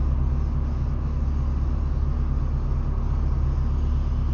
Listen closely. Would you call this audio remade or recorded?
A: recorded